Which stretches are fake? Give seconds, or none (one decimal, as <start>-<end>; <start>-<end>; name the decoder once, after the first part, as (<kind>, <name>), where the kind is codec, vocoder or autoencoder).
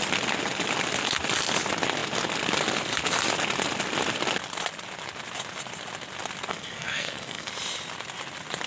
6.5-7.5 (codec, SNAC)